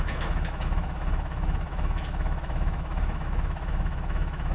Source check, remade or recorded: remade